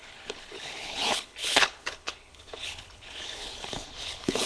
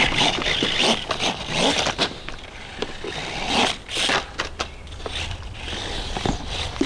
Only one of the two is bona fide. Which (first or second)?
second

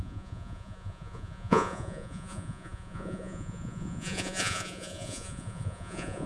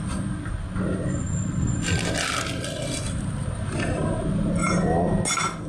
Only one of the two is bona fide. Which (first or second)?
second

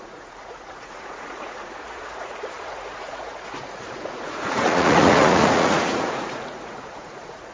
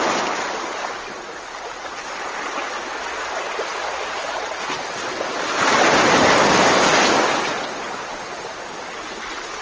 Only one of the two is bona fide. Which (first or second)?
second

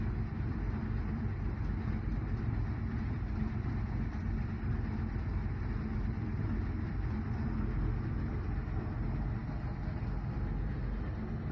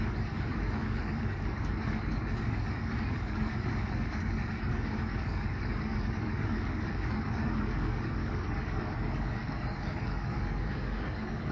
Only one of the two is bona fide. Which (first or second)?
first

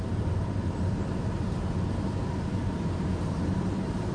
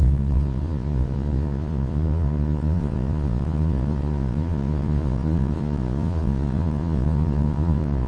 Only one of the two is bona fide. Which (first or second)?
first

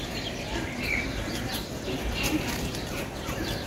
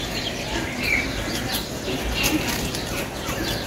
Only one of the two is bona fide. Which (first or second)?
second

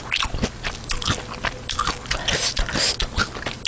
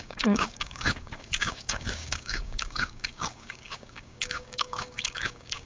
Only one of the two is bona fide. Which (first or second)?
first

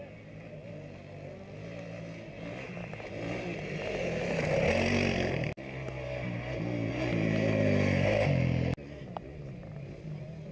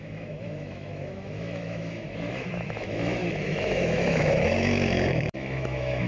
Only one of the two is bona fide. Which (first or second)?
first